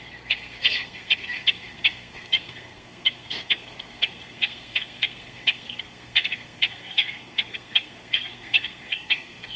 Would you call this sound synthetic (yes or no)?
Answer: yes